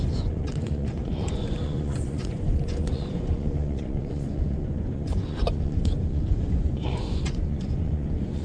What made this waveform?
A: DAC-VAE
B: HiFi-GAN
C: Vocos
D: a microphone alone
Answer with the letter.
C